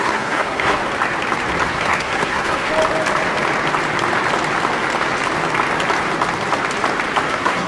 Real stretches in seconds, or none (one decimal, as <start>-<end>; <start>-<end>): 0.8-1.7; 2.7-7.3

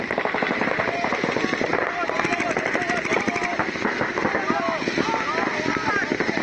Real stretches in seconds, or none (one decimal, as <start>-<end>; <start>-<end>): 0.0-6.4

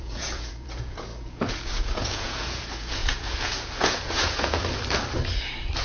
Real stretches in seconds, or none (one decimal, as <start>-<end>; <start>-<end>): 4.6-5.8

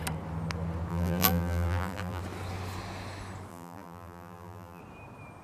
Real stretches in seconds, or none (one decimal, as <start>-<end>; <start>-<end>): 0.0-0.9; 2.2-3.5; 4.8-5.4

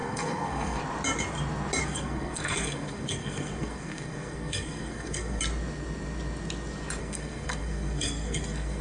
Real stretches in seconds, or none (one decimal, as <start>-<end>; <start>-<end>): 0.8-1.8; 5.4-7.0